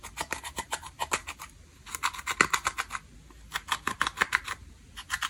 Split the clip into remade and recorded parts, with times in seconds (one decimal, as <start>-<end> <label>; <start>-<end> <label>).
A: 0.0-1.2 remade; 1.2-4.4 recorded; 4.4-5.3 remade